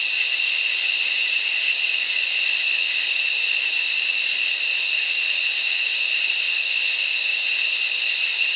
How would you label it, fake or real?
real